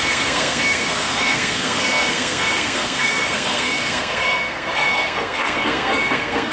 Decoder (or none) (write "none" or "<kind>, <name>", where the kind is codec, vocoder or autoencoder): codec, SNAC